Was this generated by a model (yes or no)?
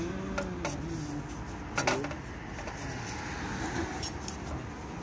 no